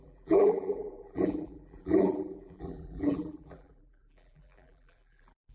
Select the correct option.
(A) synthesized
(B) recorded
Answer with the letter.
A